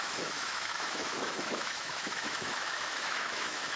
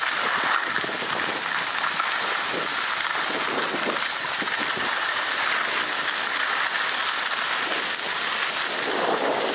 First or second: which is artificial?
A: first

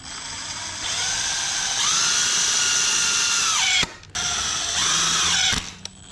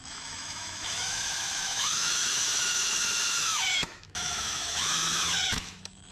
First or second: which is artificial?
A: second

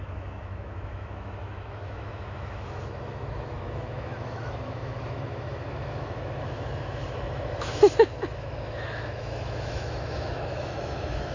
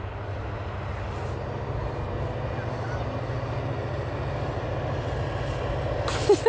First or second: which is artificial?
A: first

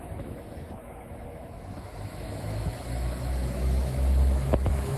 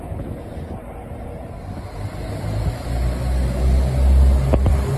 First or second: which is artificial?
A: first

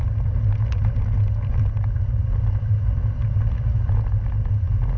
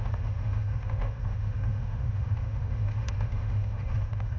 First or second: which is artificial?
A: second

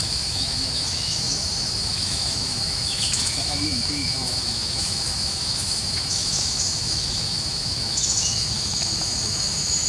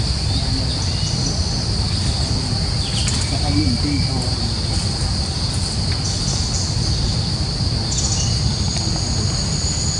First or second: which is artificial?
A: first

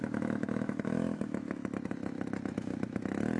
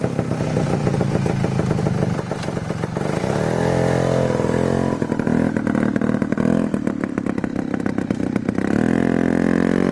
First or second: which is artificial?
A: first